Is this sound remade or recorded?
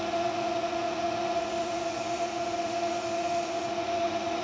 remade